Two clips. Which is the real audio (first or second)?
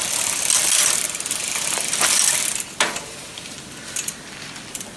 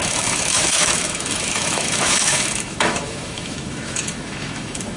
first